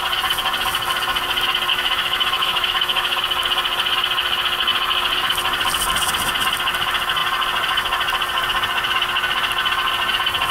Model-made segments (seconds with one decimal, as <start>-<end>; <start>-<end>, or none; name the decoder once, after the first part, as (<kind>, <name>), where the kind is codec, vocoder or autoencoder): 1.7-3.2 (autoencoder, DAC-VAE)